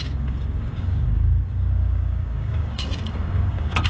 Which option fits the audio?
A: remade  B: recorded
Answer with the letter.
A